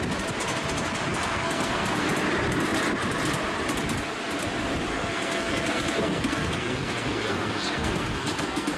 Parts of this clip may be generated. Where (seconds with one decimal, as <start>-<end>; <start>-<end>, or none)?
1.1-2.1; 4.9-8.8